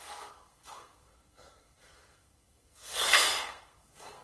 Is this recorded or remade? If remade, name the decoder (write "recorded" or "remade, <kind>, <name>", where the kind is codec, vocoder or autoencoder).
remade, codec, SNAC